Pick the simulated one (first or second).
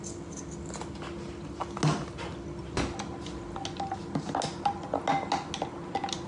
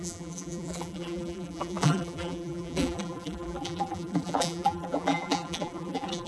second